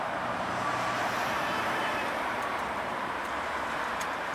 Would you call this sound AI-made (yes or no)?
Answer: yes